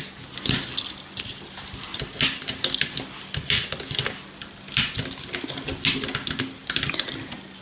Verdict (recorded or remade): recorded